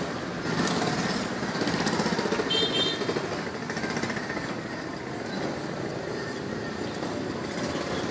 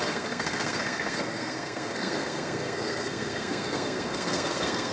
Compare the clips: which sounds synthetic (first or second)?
second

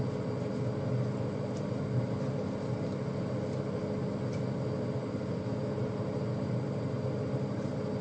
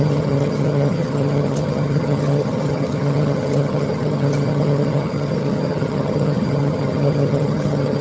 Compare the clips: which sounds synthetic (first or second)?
second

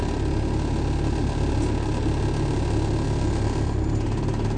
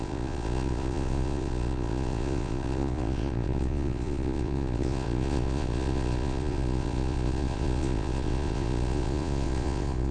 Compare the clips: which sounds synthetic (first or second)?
second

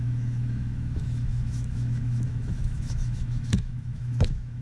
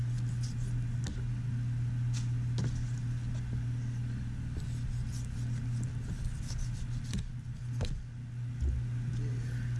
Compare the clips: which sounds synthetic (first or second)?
first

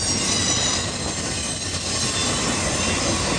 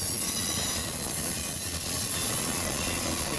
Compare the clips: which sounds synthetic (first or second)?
second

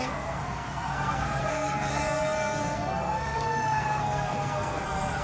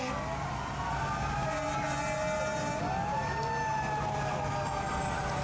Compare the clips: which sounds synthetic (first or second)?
first